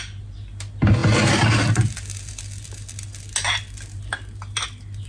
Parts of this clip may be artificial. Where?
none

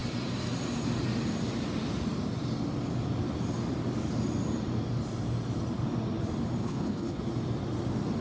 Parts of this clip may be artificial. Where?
6.6-7.2 (codec, HILCodec)

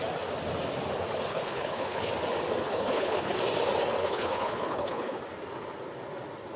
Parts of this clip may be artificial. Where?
1.3-2.1 (codec, HILCodec); 2.6-3.4; 4.0-5.2